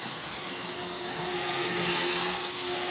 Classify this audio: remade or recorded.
remade